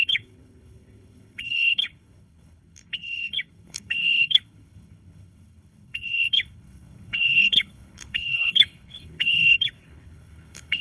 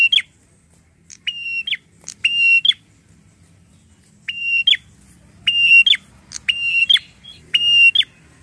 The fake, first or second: first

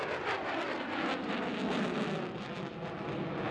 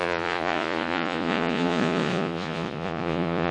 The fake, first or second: second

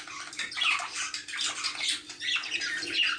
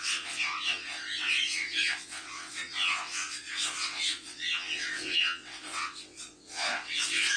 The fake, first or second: second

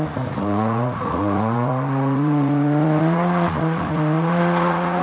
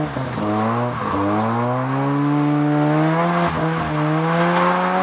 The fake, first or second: first